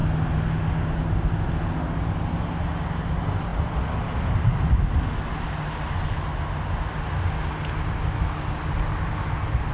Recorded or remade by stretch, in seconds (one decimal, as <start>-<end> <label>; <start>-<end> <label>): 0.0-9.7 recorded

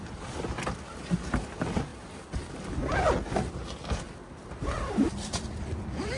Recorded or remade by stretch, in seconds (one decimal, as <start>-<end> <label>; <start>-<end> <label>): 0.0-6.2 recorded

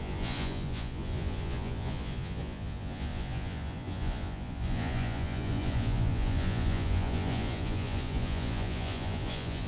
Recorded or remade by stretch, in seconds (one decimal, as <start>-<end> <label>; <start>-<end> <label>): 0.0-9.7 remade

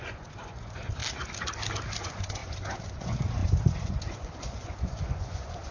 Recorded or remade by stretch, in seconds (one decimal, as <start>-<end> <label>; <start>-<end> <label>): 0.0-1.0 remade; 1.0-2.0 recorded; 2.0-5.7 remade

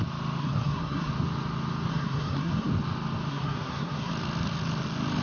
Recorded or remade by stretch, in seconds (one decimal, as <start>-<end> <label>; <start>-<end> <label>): 0.0-0.4 recorded; 0.4-1.1 remade; 1.1-1.9 recorded; 1.9-2.7 remade; 2.7-3.3 recorded; 3.3-4.1 remade; 4.1-5.2 recorded

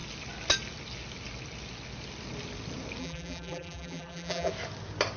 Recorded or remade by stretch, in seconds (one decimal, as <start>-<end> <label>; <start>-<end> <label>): 0.0-3.0 recorded; 3.0-4.5 remade; 4.5-5.2 recorded

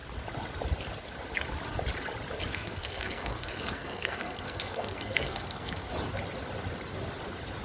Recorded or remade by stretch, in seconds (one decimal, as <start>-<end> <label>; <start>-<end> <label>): 0.0-2.5 recorded; 2.5-5.9 remade; 5.9-7.6 recorded

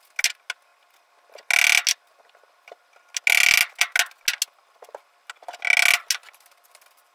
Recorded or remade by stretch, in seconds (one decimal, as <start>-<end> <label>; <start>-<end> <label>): 0.0-7.1 recorded